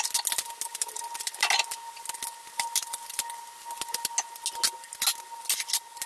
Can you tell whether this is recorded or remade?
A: recorded